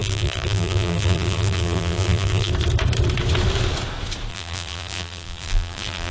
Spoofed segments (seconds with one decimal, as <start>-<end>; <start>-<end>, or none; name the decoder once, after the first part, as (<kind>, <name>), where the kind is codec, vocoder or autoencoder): 0.0-2.5 (vocoder, BigVGAN v2); 4.3-6.1